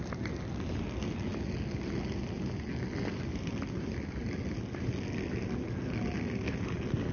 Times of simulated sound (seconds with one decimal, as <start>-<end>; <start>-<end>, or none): none